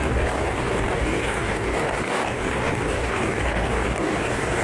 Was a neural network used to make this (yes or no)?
yes